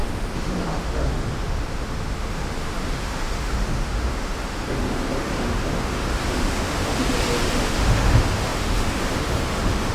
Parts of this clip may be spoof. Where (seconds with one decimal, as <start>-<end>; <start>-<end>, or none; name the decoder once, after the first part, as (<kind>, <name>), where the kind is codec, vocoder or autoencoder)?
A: 0.0-6.9 (autoencoder, DAC-VAE); 7.6-9.9